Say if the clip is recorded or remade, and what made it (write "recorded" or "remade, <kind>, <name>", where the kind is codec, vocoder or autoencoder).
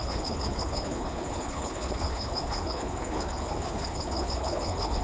remade, codec, HILCodec